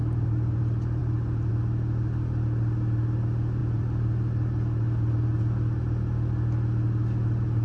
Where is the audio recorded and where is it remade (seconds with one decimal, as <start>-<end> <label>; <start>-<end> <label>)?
0.0-0.6 remade; 0.6-1.0 recorded; 1.0-1.5 remade; 1.5-3.6 recorded; 3.6-5.4 remade; 5.4-7.6 recorded